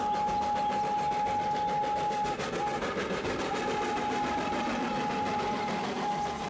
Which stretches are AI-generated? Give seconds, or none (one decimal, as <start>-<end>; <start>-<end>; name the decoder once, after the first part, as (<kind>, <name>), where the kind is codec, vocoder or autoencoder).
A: none